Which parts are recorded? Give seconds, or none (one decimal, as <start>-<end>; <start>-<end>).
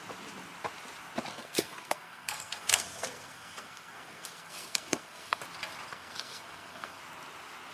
0.0-1.3; 5.4-5.9; 7.0-7.7